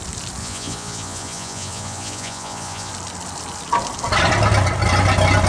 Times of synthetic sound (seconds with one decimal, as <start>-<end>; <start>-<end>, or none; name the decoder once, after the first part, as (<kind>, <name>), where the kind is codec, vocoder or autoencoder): 0.4-2.9 (vocoder, Vocos)